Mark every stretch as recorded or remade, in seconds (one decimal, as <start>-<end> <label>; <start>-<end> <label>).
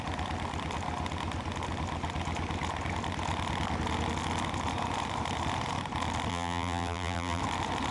0.0-6.3 recorded; 6.3-7.4 remade; 7.4-7.9 recorded